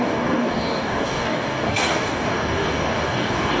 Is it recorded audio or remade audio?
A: remade